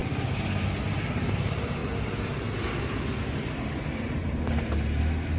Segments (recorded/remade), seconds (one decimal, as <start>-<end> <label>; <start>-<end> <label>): 0.0-5.4 recorded